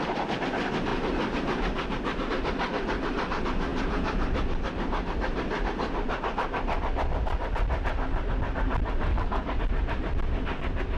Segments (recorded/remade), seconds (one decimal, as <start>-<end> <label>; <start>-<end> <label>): 0.0-9.1 recorded; 9.1-9.6 remade; 9.6-11.0 recorded